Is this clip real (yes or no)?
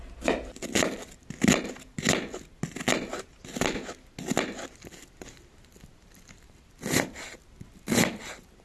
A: yes